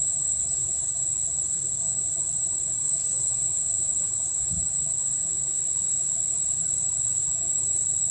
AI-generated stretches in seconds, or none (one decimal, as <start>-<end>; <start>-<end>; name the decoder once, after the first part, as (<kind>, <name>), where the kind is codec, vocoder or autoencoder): none